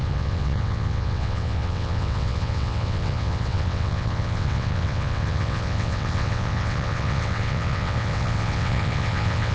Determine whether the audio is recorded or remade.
remade